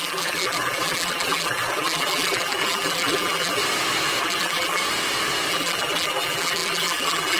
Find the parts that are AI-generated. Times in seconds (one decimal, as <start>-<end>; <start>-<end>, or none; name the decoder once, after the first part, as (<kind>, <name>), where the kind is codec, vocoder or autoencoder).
0.0-3.6 (vocoder, BigVGAN v2); 4.2-4.8; 5.5-7.4